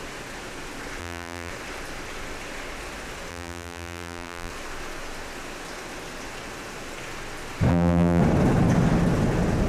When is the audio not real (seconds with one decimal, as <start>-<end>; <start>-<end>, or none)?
1.0-1.5; 3.3-4.5; 7.7-8.2